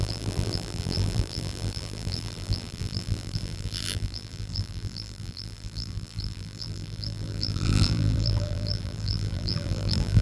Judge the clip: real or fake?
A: fake